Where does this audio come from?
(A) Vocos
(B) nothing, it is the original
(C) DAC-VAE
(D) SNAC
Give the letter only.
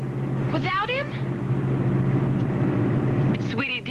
B